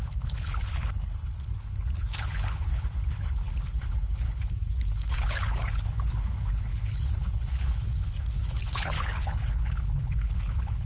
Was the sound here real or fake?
fake